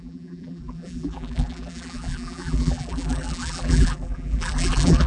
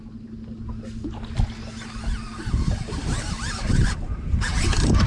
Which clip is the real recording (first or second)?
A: second